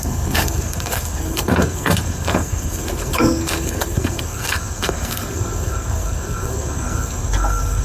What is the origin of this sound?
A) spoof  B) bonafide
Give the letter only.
A